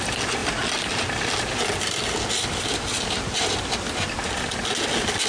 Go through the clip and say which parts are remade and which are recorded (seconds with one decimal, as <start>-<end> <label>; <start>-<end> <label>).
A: 0.0-5.3 recorded